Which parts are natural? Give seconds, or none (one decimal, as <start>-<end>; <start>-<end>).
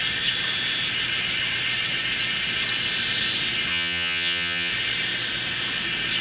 0.0-3.7; 4.7-6.2